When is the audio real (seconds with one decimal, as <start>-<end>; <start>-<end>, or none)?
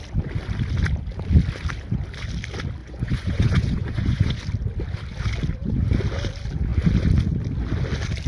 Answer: 0.0-2.8; 4.4-8.3